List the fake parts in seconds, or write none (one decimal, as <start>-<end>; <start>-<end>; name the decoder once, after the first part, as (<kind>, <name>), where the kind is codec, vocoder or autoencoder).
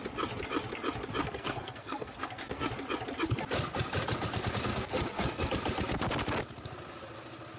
1.2-2.7 (codec, SNAC); 4.7-5.5